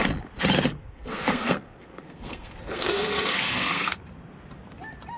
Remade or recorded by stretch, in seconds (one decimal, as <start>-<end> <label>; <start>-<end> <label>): 0.0-0.8 recorded; 0.8-3.9 remade; 3.9-5.2 recorded